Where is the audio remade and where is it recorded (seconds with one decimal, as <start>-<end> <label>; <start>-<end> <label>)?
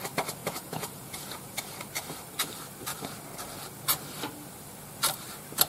0.0-0.4 recorded; 0.4-1.6 remade; 1.6-5.7 recorded